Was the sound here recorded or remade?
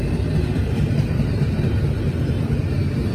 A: recorded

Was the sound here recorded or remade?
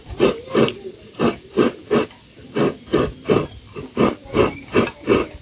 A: recorded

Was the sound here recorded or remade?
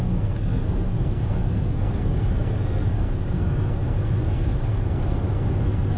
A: remade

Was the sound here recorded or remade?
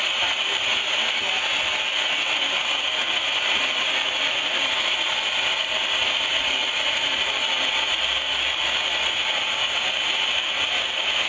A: recorded